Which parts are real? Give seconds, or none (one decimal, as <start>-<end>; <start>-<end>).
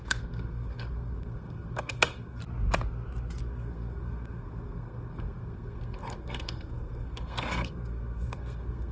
2.4-3.4